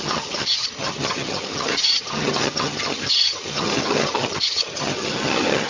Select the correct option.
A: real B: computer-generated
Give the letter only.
B